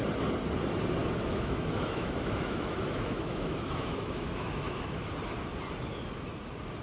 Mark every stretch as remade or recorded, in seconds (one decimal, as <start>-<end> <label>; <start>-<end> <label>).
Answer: 0.0-1.0 recorded; 1.0-5.1 remade; 5.1-6.8 recorded